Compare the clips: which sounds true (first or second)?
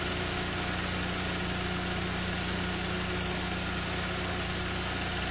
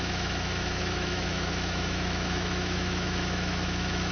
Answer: first